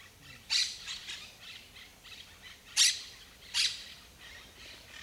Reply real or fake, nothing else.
real